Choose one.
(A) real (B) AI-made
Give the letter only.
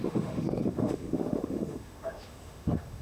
B